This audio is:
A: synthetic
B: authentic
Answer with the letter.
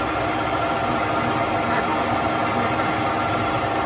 B